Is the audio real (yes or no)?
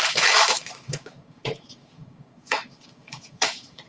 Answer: no